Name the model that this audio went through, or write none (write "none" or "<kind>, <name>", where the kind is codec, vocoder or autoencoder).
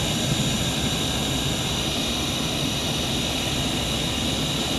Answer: none